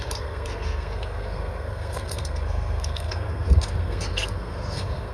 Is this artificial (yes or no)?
yes